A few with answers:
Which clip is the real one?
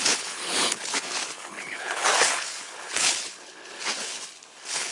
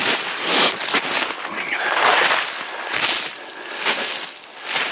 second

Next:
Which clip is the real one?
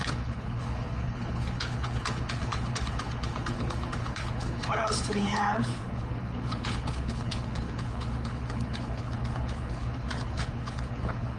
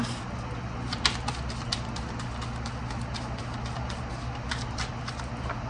second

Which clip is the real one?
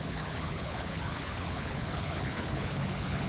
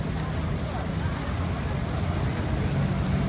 second